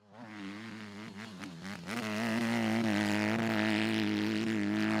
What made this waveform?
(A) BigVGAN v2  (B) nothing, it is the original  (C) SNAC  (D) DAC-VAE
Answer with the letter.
B